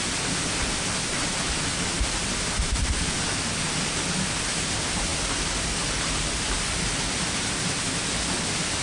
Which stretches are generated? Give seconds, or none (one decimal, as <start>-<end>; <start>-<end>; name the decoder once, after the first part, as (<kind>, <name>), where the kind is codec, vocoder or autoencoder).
none